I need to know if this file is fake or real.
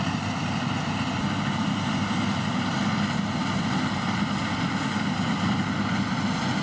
real